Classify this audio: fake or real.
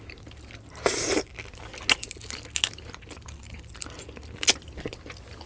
real